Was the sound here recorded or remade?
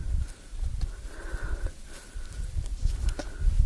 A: recorded